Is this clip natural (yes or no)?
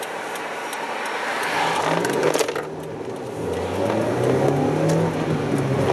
yes